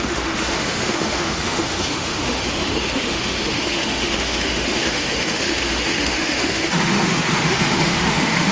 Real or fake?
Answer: fake